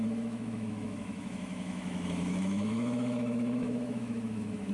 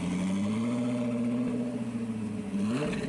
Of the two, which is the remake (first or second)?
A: first